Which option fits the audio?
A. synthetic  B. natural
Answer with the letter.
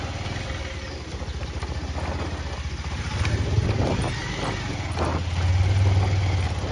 B